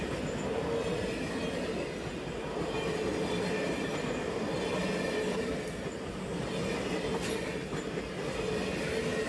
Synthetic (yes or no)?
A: no